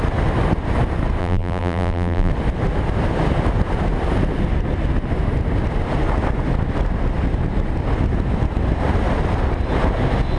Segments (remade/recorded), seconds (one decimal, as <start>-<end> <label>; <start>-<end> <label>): 0.0-1.2 recorded; 1.2-2.3 remade; 2.3-10.4 recorded